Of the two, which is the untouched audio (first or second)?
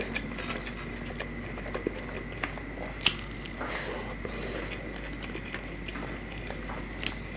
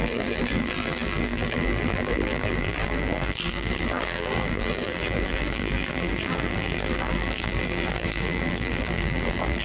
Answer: first